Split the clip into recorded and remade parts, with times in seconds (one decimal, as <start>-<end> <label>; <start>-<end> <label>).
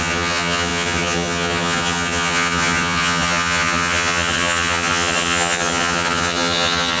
0.0-7.0 remade